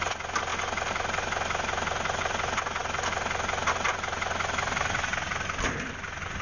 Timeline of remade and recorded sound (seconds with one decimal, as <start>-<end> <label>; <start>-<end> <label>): 0.0-6.4 recorded